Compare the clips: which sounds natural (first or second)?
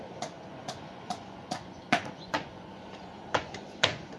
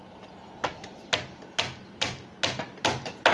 second